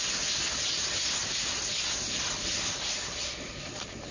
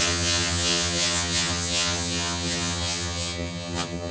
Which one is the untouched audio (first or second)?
first